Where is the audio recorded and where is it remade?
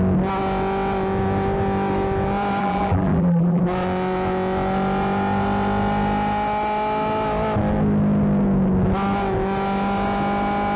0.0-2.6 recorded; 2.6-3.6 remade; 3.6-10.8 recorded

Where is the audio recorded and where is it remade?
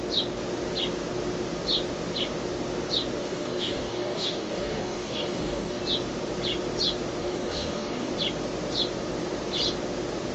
0.0-3.2 recorded; 3.2-5.8 remade; 5.8-7.2 recorded; 7.2-8.1 remade; 8.1-10.3 recorded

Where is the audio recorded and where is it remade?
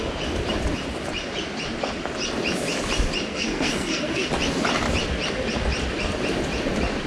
0.0-3.3 recorded; 3.3-4.3 remade; 4.3-7.1 recorded